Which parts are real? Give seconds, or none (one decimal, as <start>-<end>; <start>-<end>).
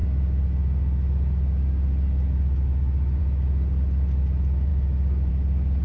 0.0-5.8